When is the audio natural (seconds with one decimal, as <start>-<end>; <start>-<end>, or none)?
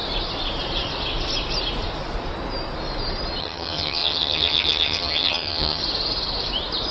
0.0-3.4; 5.8-6.9